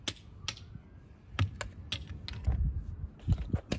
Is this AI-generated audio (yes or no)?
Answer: no